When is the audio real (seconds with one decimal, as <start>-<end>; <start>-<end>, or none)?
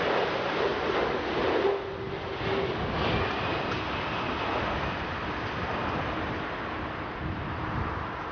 0.0-8.3